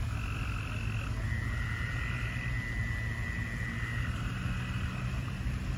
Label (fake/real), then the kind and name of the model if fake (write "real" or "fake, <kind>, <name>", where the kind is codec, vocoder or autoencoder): real